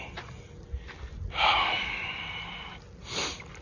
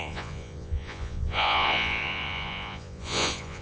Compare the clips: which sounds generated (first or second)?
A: second